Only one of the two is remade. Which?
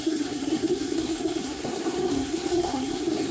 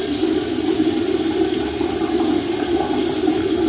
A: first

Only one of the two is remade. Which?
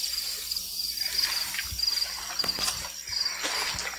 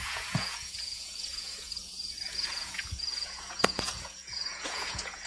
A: second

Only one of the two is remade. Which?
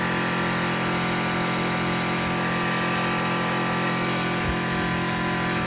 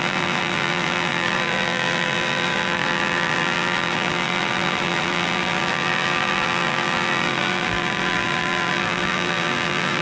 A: second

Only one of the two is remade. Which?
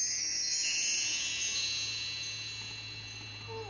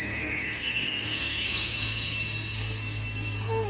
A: second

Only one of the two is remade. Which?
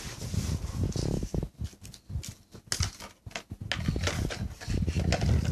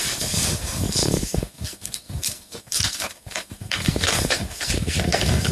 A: second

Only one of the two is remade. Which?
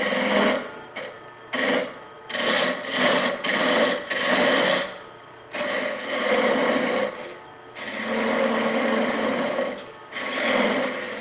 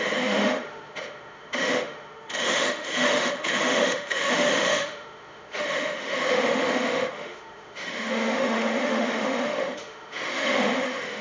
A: second